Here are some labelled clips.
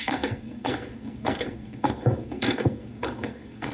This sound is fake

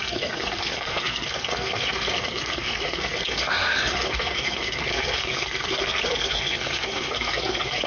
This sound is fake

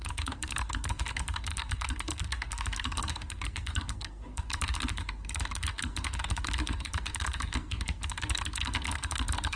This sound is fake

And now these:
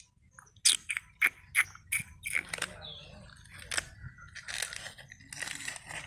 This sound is real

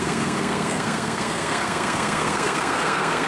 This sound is fake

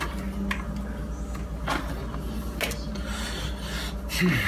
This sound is real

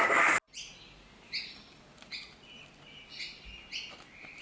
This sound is real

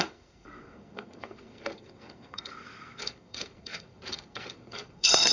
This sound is fake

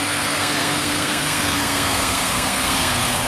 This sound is fake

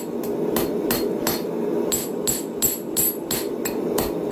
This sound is real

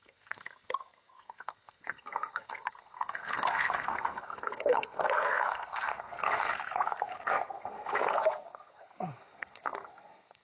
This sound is fake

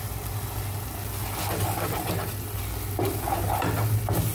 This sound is real